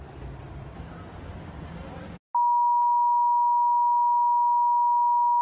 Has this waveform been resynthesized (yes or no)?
no